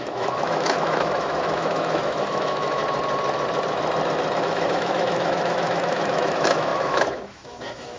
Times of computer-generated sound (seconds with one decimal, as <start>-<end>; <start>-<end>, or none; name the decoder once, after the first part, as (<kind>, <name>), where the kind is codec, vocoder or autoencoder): 0.0-2.8 (autoencoder, DAC-VAE); 4.4-8.0